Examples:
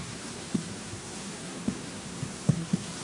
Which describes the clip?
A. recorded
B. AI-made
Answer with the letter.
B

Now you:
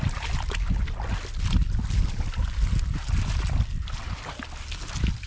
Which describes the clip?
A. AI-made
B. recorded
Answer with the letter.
B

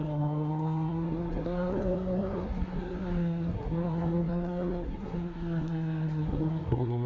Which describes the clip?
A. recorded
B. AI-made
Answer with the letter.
B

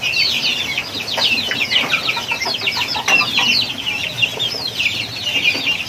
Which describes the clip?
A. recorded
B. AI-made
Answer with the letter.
A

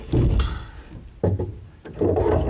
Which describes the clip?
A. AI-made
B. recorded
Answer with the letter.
B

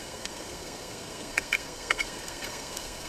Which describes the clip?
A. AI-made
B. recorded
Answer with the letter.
A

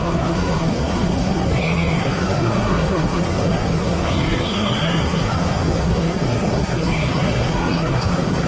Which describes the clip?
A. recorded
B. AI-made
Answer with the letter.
B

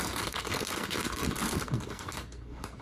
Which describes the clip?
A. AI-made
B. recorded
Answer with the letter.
A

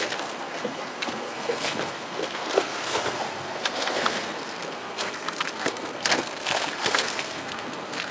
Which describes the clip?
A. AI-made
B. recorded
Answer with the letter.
A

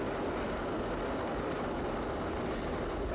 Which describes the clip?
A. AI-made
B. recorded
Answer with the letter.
B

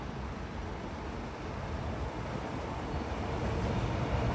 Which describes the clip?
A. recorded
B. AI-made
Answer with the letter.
A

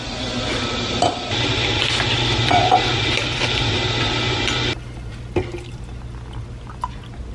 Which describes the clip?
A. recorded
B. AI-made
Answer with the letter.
A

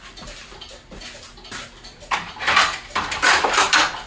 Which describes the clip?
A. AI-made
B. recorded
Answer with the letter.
B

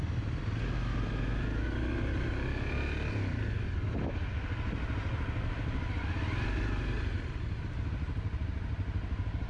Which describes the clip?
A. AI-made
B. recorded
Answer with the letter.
B